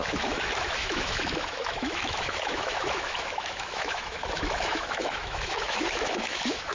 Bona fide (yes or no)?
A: no